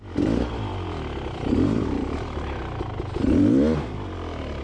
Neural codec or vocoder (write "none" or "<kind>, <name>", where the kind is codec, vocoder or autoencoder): vocoder, BigVGAN v2